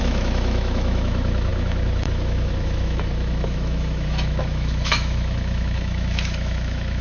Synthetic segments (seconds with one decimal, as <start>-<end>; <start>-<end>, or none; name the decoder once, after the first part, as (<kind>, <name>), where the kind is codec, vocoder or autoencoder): 0.0-7.0 (autoencoder, DAC-VAE)